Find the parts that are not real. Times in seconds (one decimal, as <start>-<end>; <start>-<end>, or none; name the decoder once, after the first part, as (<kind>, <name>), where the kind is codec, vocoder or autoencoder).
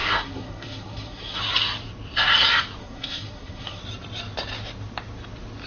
0.0-1.4 (codec, SNAC); 2.8-3.8